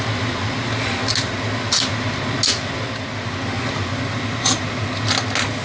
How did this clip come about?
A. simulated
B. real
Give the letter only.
B